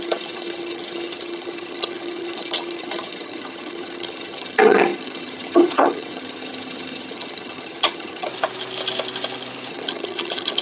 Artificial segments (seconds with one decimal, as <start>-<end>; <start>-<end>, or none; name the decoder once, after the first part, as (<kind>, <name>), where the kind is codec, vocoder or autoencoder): 0.0-8.3 (vocoder, HiFi-GAN); 9.7-10.6